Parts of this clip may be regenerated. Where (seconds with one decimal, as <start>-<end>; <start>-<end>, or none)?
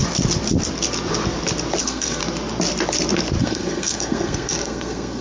1.8-2.2; 3.4-5.2